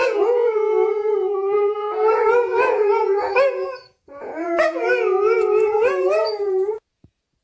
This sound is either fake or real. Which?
fake